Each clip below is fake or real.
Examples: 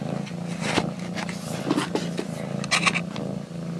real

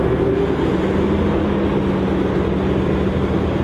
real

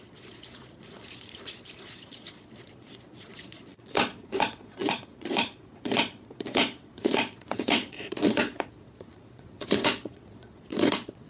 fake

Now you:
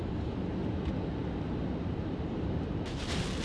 real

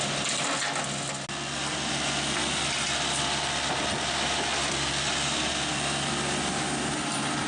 real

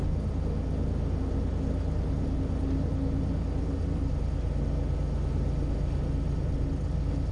real